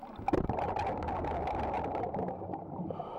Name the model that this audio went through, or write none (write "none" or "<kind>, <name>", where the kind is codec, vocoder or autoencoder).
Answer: none